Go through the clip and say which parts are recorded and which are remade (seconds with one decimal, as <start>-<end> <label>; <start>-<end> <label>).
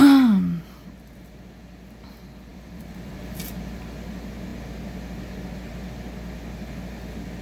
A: 0.0-2.5 recorded; 2.5-3.4 remade; 3.4-7.4 recorded